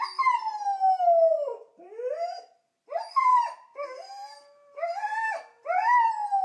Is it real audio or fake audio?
real